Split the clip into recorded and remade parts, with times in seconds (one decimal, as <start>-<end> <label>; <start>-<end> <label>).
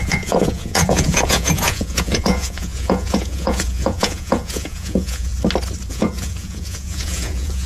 0.0-5.3 remade; 5.3-5.9 recorded; 5.9-7.7 remade